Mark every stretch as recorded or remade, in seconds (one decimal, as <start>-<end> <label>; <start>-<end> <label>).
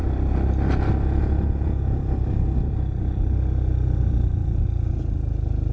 0.0-5.7 recorded